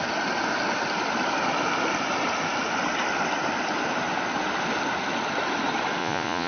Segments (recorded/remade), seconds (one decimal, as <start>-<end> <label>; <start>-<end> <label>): 0.0-6.0 recorded; 6.0-6.5 remade